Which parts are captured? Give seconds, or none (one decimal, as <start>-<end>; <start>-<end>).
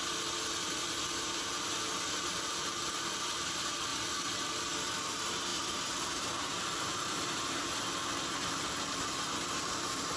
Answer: 0.0-1.0; 3.9-4.8